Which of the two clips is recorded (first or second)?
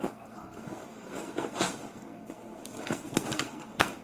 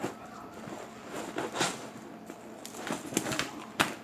second